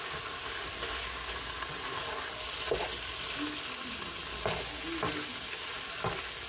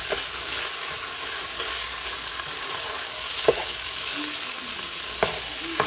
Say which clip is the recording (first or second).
first